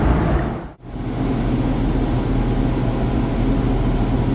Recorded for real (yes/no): yes